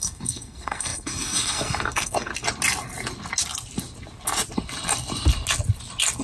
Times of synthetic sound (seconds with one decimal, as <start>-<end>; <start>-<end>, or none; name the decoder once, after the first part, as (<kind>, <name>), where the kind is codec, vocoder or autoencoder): 0.0-2.3 (codec, SNAC)